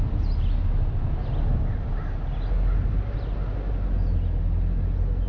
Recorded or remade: recorded